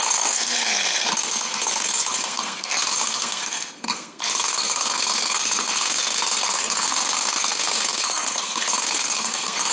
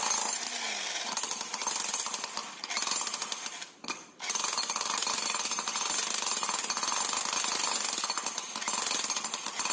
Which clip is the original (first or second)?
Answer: second